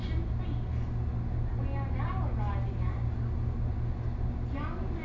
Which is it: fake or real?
real